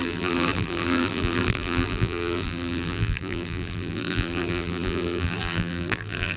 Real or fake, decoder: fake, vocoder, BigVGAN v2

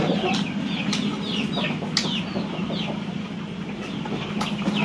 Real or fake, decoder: real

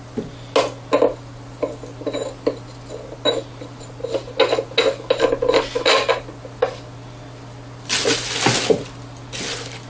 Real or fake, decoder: real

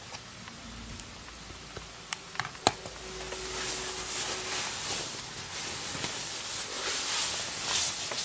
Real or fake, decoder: real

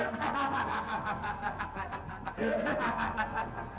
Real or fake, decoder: fake, codec, SNAC